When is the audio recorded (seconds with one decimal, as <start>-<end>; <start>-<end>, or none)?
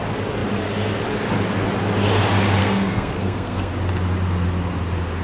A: 0.0-2.6; 3.7-5.2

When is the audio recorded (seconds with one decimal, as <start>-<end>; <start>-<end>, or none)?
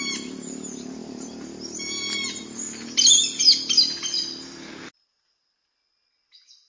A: 0.0-1.0; 3.4-6.7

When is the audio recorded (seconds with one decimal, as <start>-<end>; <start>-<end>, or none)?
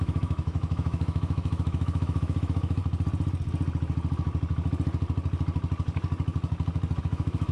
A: 2.8-7.0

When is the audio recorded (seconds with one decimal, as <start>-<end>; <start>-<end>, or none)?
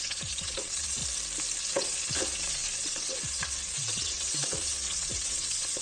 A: 1.0-1.6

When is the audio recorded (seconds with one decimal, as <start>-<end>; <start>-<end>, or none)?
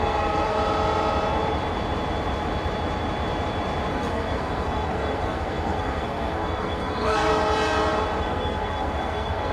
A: 0.6-3.9; 7.3-8.2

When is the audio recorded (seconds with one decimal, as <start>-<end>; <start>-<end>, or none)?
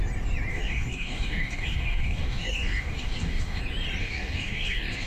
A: 0.0-0.5; 3.6-4.0